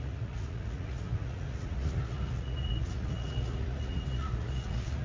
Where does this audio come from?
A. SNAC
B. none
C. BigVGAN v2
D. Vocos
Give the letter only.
D